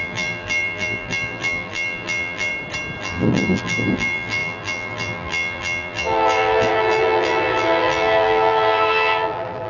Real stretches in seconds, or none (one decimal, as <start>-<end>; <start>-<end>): 2.5-3.0